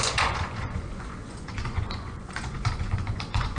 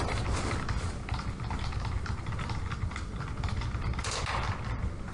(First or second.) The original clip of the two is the second